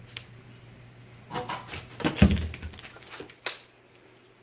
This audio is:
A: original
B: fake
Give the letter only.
A